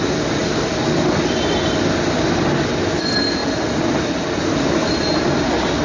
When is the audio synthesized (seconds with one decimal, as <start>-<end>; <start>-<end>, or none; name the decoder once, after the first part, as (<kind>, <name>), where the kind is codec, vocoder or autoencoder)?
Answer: none

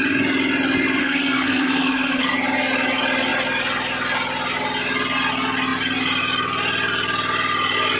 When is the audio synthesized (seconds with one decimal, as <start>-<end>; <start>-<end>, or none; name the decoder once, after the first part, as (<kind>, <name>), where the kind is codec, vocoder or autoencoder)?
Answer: 1.0-2.3 (codec, SNAC)